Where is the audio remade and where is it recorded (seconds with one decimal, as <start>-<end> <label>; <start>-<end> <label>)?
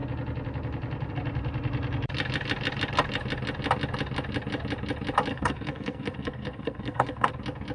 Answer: 0.0-5.3 recorded; 5.3-7.3 remade; 7.3-7.7 recorded